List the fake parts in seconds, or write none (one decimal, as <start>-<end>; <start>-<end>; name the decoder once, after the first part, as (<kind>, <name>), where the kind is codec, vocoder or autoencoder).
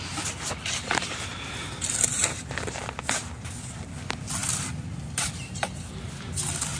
2.2-3.2 (vocoder, BigVGAN v2)